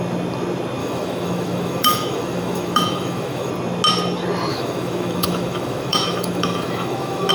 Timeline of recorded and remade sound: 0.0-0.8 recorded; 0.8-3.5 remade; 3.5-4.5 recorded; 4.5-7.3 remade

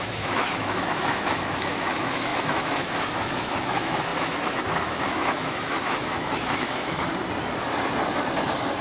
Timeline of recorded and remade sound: 0.0-7.1 remade; 7.1-8.8 recorded

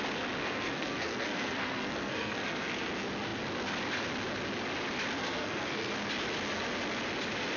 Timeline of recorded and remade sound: 0.0-0.4 recorded; 0.4-2.9 remade; 2.9-5.2 recorded; 5.2-5.9 remade; 5.9-7.6 recorded

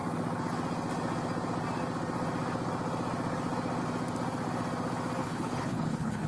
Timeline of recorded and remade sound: 0.0-5.2 recorded; 5.2-6.3 remade

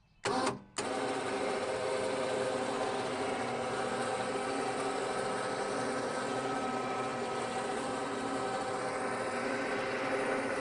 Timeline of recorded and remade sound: 0.0-7.1 recorded; 7.1-8.9 remade; 8.9-10.6 recorded

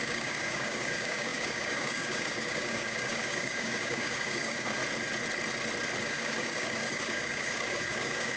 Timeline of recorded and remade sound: 0.0-4.8 remade; 4.8-6.0 recorded; 6.0-8.4 remade